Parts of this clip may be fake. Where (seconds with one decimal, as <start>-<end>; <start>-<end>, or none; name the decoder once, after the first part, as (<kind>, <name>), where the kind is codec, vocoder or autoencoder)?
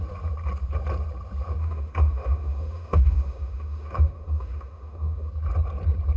1.6-5.3 (autoencoder, DAC-VAE)